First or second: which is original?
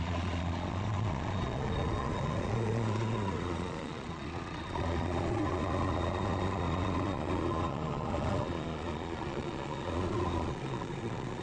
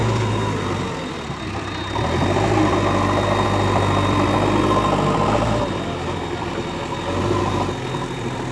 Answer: second